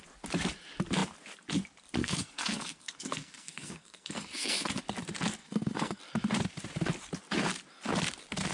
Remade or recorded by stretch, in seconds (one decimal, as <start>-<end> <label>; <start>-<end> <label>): 0.0-2.0 recorded; 2.0-4.8 remade; 4.8-5.4 recorded; 5.4-6.0 remade; 6.0-8.5 recorded